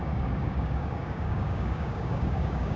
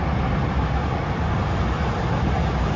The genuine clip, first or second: second